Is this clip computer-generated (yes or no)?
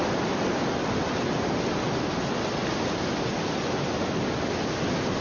no